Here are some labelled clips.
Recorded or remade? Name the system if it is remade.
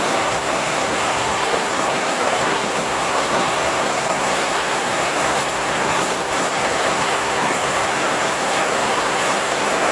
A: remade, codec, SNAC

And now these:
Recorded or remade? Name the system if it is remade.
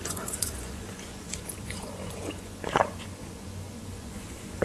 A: remade, vocoder, Vocos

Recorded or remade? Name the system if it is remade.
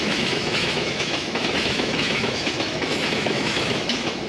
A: remade, autoencoder, DAC-VAE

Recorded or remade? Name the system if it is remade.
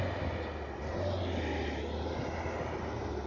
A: recorded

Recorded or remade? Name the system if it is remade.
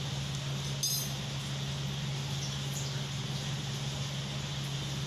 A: recorded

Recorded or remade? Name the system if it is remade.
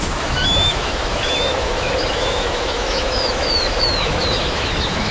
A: remade, autoencoder, DAC-VAE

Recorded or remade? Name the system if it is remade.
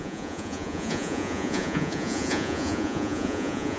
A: remade, vocoder, Vocos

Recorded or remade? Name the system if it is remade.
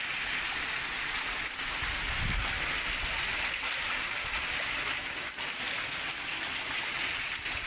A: recorded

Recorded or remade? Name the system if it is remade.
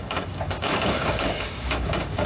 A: remade, codec, DAC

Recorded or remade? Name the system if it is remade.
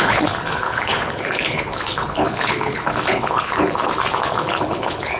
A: remade, codec, HILCodec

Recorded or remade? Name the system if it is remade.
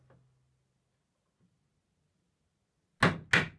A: recorded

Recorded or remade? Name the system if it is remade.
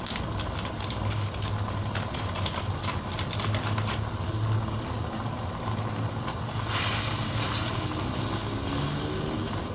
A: recorded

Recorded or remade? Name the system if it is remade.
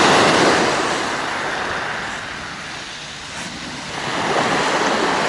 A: recorded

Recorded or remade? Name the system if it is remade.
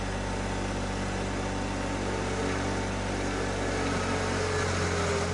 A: recorded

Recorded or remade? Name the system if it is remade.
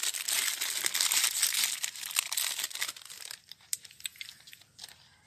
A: recorded